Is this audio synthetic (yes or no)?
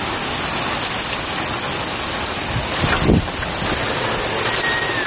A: no